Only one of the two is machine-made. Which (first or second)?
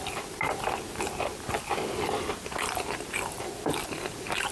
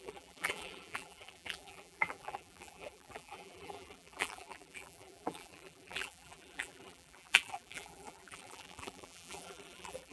second